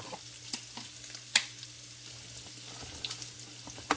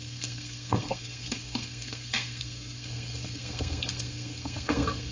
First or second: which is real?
first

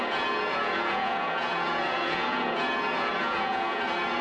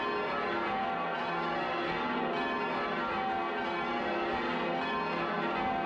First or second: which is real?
second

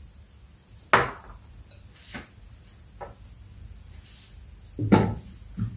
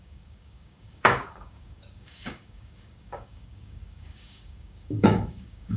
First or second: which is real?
first